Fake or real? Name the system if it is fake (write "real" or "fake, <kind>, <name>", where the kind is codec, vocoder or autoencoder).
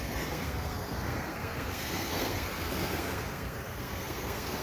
fake, codec, SNAC